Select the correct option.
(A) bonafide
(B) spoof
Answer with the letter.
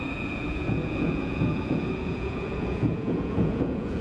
B